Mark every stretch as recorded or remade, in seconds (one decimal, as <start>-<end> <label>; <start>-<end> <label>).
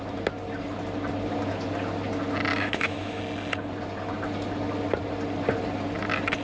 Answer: 0.0-2.5 recorded; 2.5-3.2 remade; 3.2-6.4 recorded